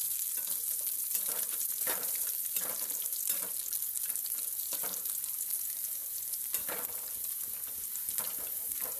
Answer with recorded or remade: remade